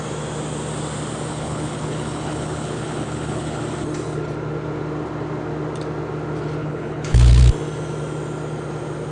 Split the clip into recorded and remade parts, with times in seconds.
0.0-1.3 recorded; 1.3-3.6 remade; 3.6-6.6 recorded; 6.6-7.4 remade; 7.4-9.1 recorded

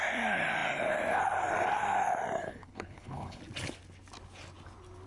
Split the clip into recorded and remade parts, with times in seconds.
0.0-2.5 recorded; 2.5-3.4 remade; 3.4-5.1 recorded

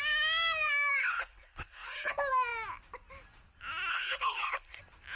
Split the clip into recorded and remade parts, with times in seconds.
0.0-1.0 recorded; 1.0-2.1 remade; 2.1-3.9 recorded; 3.9-4.8 remade; 4.8-5.2 recorded

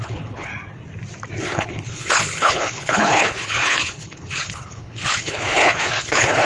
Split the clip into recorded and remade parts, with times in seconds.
0.0-0.5 remade; 0.5-1.4 recorded; 1.4-6.4 remade

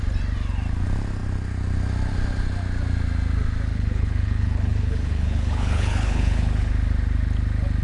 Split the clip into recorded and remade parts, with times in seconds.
0.0-3.7 recorded; 3.7-6.7 remade; 6.7-7.8 recorded

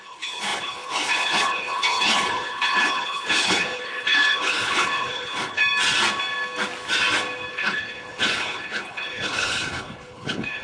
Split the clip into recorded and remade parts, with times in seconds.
0.0-5.6 remade; 5.6-7.5 recorded; 7.5-10.6 remade

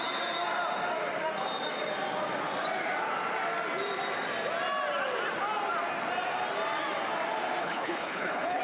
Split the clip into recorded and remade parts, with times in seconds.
0.0-7.6 recorded; 7.6-8.6 remade

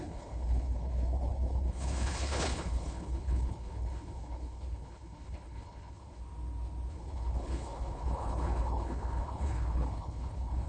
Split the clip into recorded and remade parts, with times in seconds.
0.0-6.2 remade; 6.2-6.9 recorded; 6.9-10.7 remade